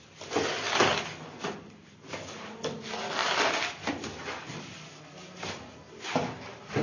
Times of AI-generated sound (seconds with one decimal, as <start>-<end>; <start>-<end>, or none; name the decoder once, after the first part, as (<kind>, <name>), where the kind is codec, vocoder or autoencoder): none